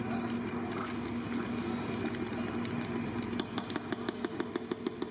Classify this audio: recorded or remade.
recorded